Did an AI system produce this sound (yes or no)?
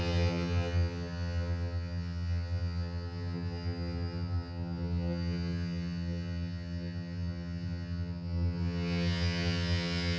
yes